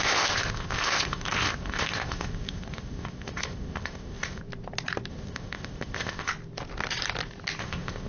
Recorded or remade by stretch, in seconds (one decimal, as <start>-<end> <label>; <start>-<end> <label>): 0.0-4.4 remade; 4.4-5.1 recorded; 5.1-6.3 remade; 6.3-7.6 recorded; 7.6-8.1 remade